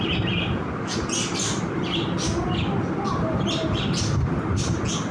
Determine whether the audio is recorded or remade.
recorded